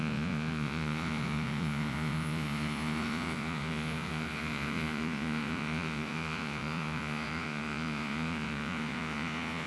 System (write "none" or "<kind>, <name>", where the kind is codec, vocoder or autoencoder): vocoder, Vocos